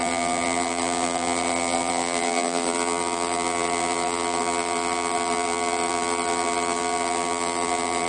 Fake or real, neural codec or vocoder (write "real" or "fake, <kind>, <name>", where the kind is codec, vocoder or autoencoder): fake, vocoder, BigVGAN v2